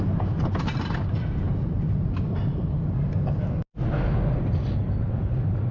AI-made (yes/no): no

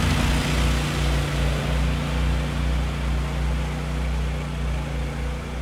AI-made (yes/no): no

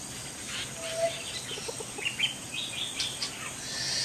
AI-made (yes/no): no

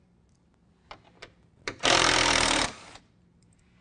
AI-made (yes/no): yes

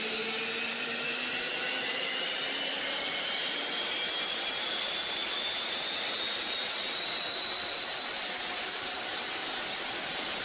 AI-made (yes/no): yes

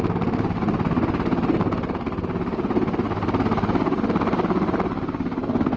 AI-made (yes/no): no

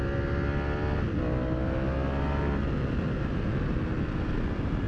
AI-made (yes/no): no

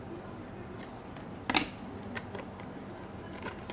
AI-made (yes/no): no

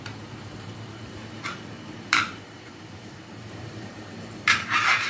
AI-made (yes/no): yes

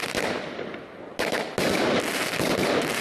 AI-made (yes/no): no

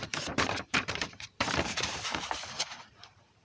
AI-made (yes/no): yes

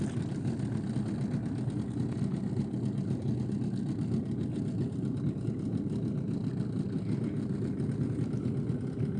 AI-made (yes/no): no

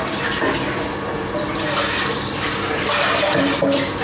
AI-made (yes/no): no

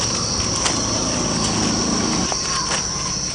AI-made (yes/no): no